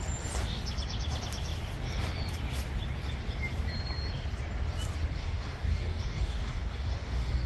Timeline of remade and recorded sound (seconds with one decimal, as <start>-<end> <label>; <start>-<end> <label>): 0.0-5.1 recorded; 5.1-7.5 remade